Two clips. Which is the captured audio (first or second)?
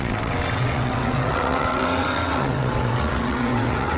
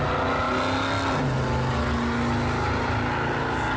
second